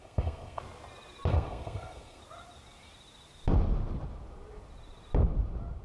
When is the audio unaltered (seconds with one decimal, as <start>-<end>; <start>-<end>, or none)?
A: 0.6-1.3; 2.2-5.8